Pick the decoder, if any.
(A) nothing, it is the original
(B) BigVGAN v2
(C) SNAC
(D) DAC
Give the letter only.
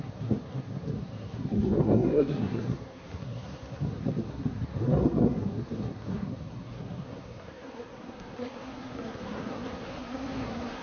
C